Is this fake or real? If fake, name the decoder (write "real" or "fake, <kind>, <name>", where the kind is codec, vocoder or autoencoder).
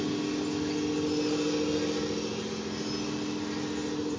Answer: real